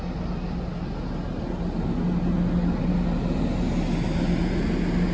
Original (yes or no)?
yes